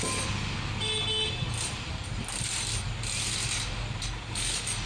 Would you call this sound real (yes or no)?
yes